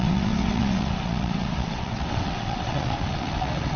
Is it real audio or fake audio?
fake